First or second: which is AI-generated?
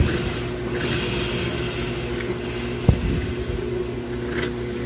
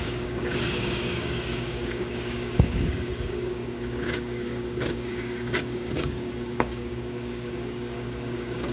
second